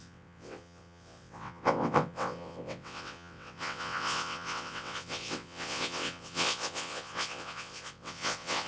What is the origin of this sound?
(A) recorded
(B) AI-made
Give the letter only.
B